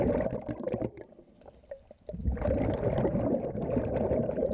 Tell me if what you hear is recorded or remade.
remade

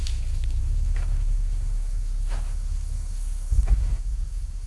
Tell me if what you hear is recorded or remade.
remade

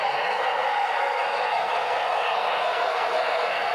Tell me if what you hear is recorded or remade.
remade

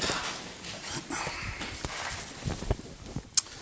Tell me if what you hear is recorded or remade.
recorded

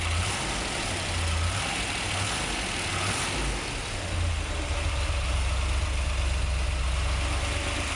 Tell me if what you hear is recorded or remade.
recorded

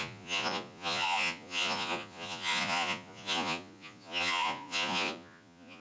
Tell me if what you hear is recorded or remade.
remade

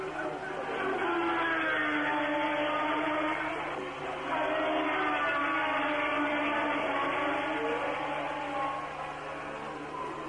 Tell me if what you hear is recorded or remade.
recorded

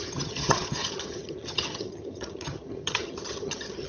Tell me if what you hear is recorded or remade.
remade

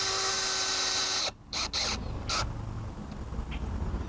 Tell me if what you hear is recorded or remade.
recorded